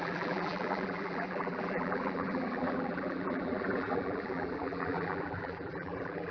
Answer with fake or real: fake